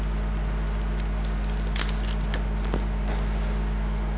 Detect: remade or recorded recorded